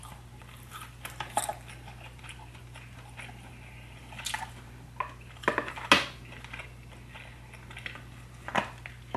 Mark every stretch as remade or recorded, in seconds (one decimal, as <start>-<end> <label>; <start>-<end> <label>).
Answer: 0.0-9.2 recorded